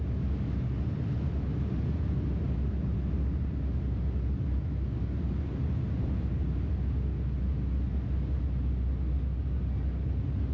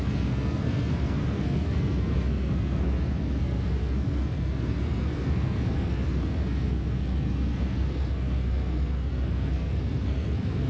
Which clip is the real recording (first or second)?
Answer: first